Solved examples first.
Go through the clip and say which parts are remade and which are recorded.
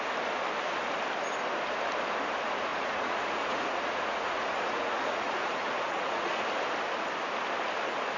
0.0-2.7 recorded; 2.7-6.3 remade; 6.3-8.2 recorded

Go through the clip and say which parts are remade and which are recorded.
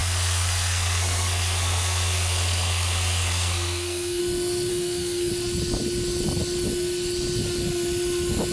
0.0-4.2 remade; 4.2-4.7 recorded; 4.7-5.3 remade; 5.3-8.5 recorded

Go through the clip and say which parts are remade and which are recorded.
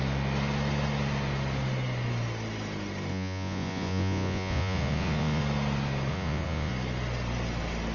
0.0-3.1 recorded; 3.1-5.4 remade; 5.4-6.1 recorded; 6.1-6.7 remade; 6.7-7.9 recorded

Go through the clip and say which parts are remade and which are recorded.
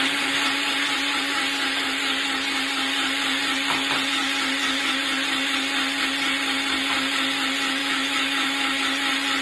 0.0-7.8 recorded; 7.8-8.8 remade; 8.8-9.4 recorded